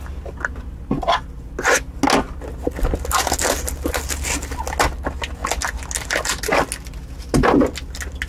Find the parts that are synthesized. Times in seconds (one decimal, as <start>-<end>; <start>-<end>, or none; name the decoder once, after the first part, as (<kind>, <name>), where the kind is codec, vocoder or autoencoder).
none

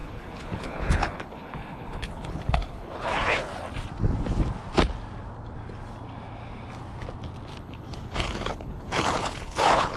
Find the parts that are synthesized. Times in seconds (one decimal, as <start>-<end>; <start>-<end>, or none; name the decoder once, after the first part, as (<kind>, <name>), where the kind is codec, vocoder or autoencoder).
0.0-3.5 (codec, HILCodec); 7.6-10.0